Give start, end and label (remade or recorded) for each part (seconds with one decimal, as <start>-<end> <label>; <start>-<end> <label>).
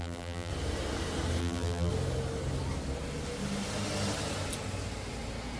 0.0-0.5 remade; 0.5-1.4 recorded; 1.4-1.9 remade; 1.9-5.6 recorded